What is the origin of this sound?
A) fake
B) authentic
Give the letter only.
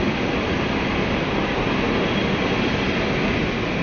B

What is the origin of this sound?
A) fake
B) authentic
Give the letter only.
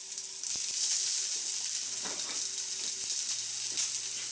B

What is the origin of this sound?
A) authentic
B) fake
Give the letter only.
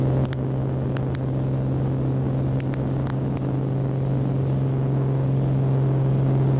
A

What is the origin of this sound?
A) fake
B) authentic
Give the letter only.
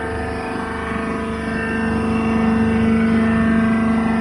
B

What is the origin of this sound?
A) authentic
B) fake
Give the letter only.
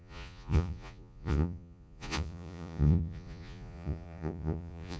B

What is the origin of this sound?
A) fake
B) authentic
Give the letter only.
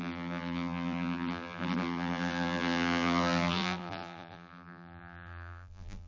A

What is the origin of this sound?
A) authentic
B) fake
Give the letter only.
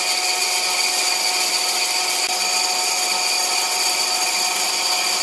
A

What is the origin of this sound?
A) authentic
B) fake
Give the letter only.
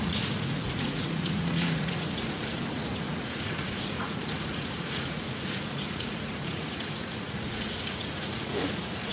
B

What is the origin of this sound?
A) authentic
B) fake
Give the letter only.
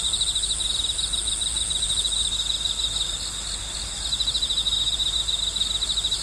A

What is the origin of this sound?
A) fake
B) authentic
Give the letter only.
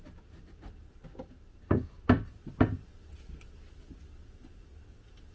B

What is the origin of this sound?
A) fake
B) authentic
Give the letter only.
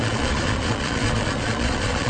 A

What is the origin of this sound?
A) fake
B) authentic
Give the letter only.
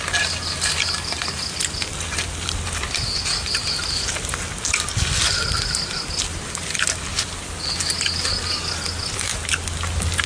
B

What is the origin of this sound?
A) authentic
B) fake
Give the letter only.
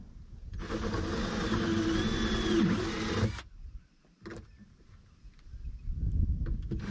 A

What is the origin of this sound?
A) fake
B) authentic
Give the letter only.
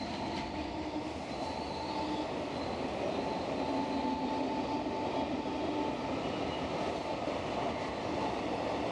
B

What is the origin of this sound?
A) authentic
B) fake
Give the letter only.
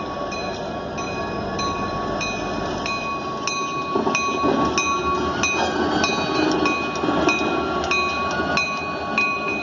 A